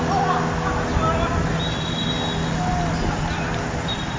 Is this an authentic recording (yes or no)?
yes